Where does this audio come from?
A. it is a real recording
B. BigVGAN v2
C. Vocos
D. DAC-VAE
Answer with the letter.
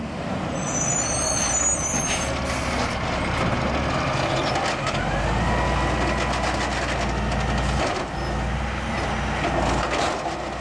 A